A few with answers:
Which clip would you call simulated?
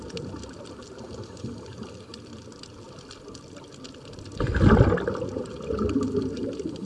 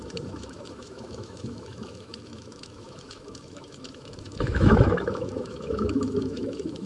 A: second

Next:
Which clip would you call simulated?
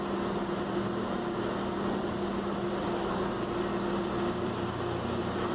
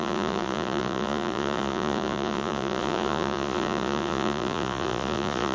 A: second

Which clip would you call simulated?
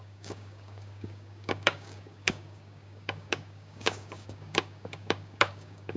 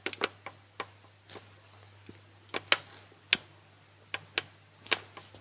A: first